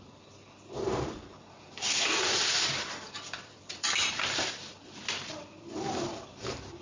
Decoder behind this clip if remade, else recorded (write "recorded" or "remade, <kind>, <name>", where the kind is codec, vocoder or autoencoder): remade, vocoder, BigVGAN v2